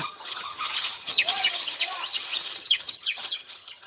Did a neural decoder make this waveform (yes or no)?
yes